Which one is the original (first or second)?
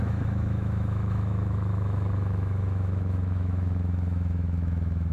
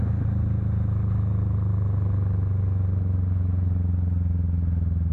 second